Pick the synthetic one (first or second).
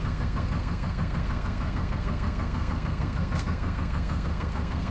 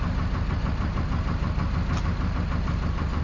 first